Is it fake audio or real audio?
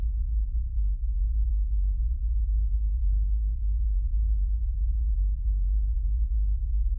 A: fake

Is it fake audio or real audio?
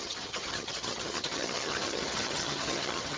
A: fake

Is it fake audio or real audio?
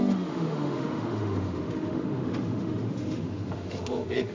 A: fake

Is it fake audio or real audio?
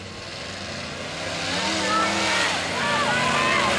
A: real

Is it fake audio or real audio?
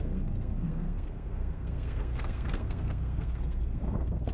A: fake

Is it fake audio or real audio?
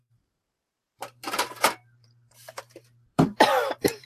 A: fake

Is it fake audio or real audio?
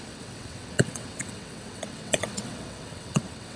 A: fake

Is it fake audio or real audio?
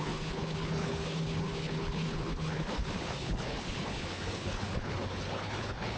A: fake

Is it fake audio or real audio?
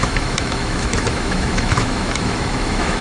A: fake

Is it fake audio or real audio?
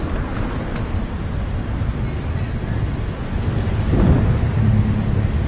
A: real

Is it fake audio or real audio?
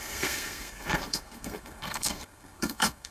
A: fake